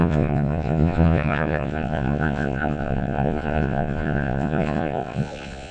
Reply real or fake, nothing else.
fake